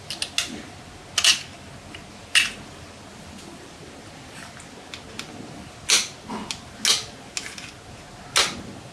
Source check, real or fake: real